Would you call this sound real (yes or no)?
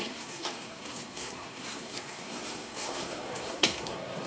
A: no